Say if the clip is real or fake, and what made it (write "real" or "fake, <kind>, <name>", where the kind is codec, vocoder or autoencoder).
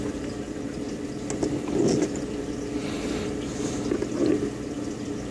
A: real